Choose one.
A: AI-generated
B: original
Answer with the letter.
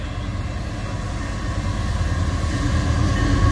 B